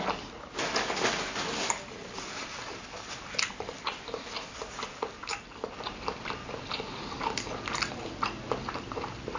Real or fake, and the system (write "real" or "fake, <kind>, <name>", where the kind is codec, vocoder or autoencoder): real